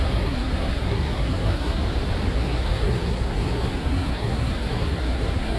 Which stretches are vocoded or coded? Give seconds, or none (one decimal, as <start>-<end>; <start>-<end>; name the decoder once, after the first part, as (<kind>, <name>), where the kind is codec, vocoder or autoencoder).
0.0-1.8 (codec, SNAC); 2.3-5.6